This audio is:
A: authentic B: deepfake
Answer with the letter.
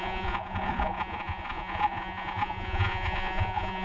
B